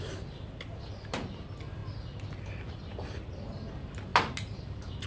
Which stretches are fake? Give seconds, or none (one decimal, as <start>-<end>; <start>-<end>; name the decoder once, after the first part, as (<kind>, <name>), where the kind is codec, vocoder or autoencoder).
none